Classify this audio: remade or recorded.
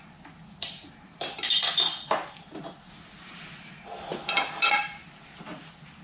recorded